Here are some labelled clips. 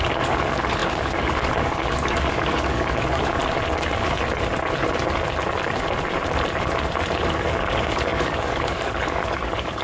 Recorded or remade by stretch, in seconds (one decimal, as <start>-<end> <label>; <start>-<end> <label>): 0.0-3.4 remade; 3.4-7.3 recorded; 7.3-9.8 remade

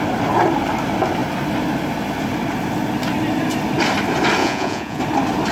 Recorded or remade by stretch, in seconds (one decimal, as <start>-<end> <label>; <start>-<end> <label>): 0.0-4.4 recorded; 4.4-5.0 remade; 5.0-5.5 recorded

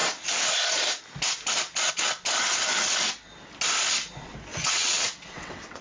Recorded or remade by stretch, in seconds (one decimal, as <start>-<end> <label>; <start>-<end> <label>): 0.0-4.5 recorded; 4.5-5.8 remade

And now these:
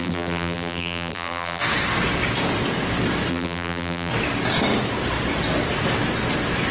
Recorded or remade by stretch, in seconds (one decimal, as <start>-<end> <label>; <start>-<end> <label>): 0.0-1.6 remade; 1.6-3.3 recorded; 3.3-4.1 remade; 4.1-6.7 recorded

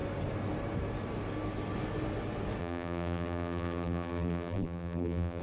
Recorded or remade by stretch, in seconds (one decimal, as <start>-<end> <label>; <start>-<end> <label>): 0.0-2.6 recorded; 2.6-5.4 remade

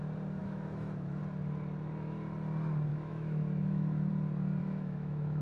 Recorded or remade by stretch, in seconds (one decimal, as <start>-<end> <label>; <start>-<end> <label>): 0.0-0.4 recorded; 0.4-1.2 remade; 1.2-2.9 recorded; 2.9-4.1 remade; 4.1-4.6 recorded; 4.6-5.4 remade

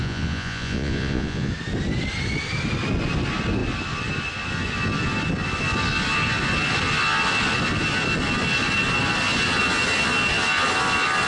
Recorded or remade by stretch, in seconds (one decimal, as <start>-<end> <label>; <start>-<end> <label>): 0.0-1.5 remade; 1.5-11.3 recorded